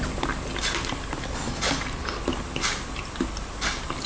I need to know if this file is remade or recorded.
recorded